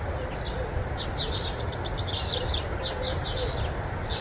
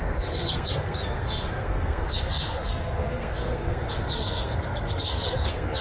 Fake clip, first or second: second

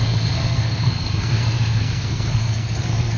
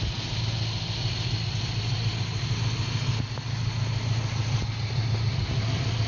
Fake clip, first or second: first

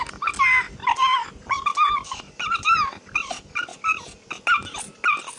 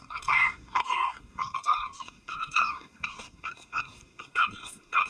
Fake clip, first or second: second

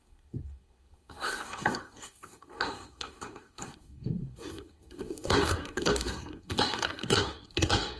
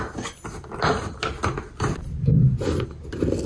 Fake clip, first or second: first